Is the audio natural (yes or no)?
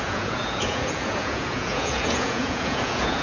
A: no